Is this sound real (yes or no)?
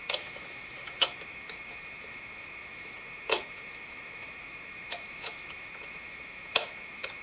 no